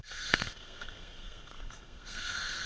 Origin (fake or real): fake